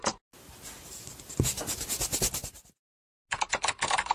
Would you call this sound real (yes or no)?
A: yes